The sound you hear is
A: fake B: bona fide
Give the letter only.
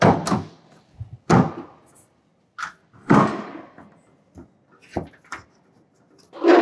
B